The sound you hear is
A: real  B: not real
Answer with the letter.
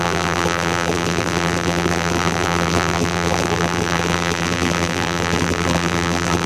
B